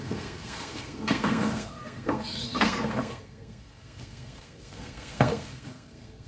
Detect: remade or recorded remade